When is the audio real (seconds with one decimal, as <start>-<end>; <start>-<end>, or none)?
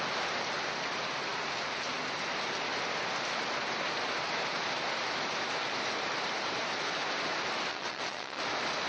0.0-7.7; 8.4-8.9